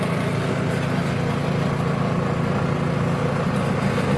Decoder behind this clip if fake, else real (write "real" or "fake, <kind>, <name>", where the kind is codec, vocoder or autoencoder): real